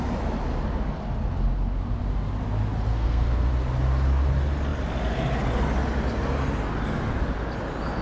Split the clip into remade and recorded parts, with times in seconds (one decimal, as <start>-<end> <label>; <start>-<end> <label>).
0.0-2.9 recorded; 2.9-3.5 remade; 3.5-8.0 recorded